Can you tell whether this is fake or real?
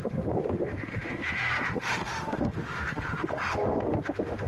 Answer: fake